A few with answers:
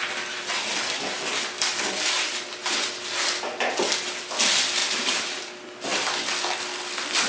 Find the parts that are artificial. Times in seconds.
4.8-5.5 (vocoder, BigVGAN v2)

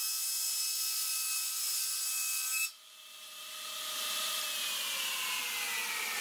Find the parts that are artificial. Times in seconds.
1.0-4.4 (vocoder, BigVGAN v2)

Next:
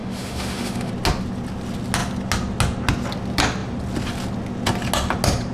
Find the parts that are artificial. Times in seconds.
0.0-0.9 (autoencoder, DAC-VAE)

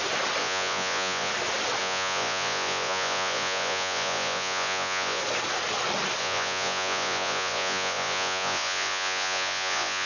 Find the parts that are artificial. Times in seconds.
0.4-1.3 (vocoder, Vocos); 1.8-5.2; 6.2-10.1